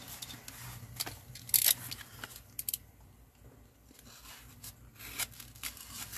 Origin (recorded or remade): recorded